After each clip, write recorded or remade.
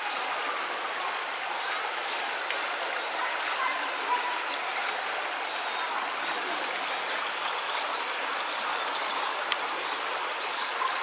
recorded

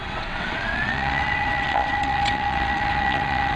remade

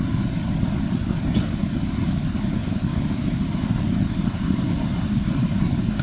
recorded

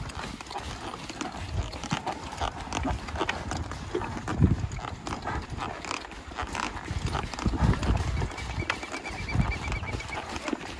recorded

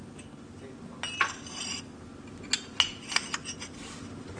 recorded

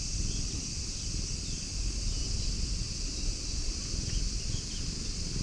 recorded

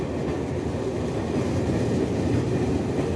recorded